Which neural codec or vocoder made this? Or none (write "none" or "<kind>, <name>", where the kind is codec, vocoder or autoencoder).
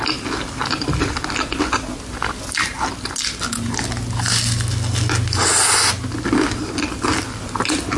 none